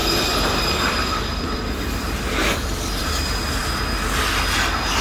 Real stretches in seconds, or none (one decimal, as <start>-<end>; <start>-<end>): 3.6-5.0